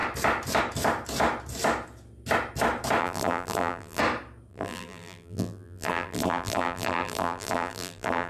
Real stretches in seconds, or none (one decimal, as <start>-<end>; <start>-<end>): 0.0-3.0; 4.0-4.5